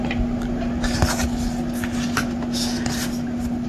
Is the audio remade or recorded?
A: recorded